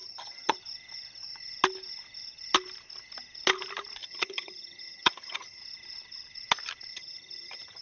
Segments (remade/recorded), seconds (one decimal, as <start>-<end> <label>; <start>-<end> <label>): 0.0-0.6 remade; 0.6-4.0 recorded; 4.0-5.6 remade; 5.6-6.9 recorded; 6.9-7.8 remade